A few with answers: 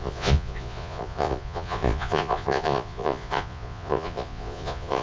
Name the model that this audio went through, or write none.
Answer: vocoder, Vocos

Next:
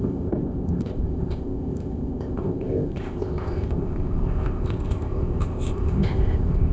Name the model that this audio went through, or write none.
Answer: codec, ZipCodec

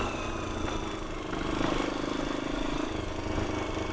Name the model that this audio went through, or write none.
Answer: none